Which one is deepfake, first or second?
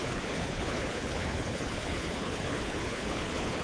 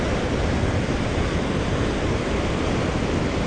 first